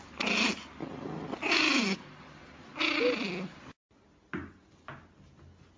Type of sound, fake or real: real